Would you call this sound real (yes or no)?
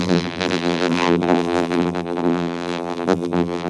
no